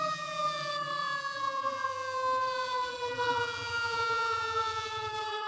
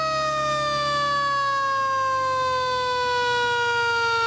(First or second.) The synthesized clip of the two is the first